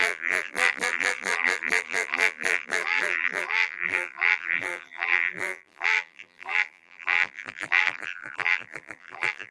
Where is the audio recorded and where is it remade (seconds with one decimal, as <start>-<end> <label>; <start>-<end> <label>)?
0.0-9.5 remade